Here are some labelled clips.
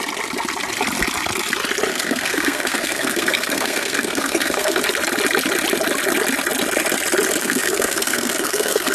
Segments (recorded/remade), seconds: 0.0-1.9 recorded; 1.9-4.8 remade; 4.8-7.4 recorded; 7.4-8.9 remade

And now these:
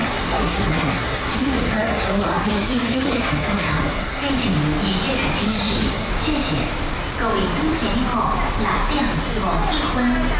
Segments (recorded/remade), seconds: 0.0-4.3 remade; 4.3-5.4 recorded; 5.4-6.1 remade; 6.1-10.4 recorded

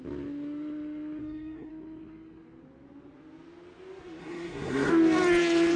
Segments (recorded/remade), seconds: 0.0-1.2 recorded; 1.2-1.7 remade; 1.7-4.2 recorded; 4.2-4.9 remade; 4.9-5.8 recorded

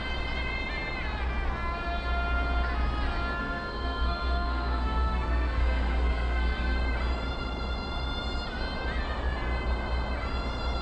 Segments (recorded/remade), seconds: 0.0-3.4 recorded; 3.4-6.8 remade; 6.8-10.8 recorded

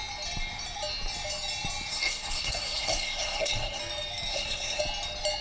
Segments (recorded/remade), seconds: 0.0-1.9 recorded; 1.9-3.8 remade; 3.8-4.3 recorded; 4.3-4.8 remade; 4.8-5.4 recorded

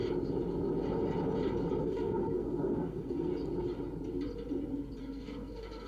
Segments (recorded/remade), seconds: 0.0-1.8 recorded; 1.8-3.3 remade; 3.3-5.0 recorded; 5.0-5.9 remade

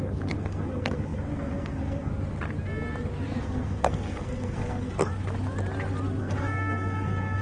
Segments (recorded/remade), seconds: 0.0-2.1 remade; 2.1-3.4 recorded; 3.4-5.1 remade; 5.1-6.2 recorded; 6.2-7.4 remade